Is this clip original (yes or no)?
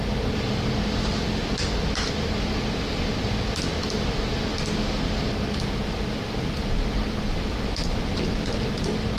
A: yes